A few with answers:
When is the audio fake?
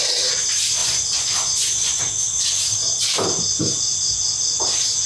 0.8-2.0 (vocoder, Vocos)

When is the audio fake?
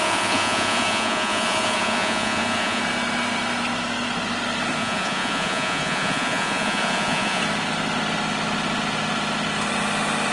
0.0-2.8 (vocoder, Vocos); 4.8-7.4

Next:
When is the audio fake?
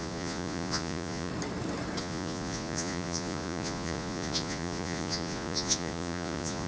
0.0-1.3 (vocoder, Vocos); 2.0-6.7